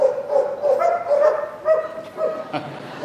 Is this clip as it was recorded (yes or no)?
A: yes